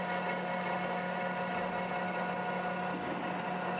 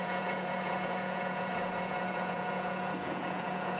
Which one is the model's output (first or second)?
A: second